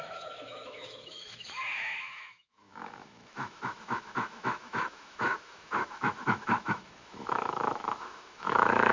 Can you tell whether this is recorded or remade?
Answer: remade